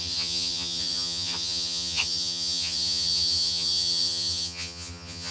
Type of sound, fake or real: fake